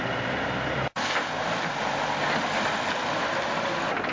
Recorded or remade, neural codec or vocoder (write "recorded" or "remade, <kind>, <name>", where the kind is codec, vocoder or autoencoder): recorded